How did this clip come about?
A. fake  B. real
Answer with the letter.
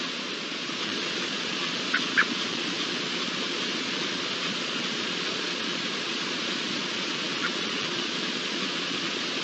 A